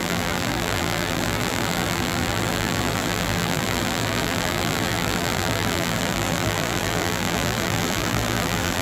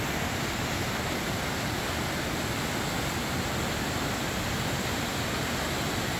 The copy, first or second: first